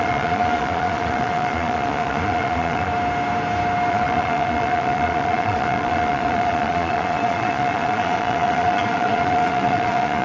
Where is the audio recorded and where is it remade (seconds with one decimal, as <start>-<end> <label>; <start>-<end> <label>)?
0.0-2.9 remade; 2.9-3.9 recorded; 3.9-10.2 remade